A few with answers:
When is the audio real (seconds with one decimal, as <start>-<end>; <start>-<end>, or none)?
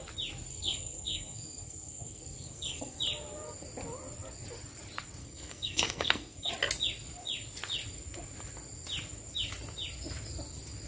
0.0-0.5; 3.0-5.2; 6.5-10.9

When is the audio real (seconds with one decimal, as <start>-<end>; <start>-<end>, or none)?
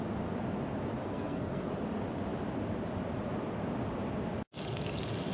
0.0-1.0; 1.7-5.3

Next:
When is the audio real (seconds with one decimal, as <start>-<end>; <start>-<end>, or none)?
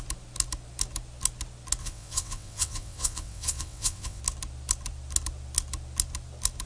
0.0-1.8; 4.2-6.7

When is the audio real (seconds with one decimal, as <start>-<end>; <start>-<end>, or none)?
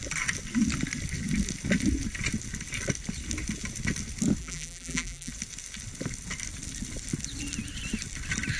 0.0-4.4; 5.3-8.6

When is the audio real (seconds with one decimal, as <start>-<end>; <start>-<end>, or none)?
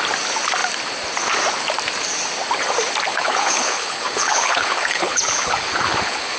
0.0-3.1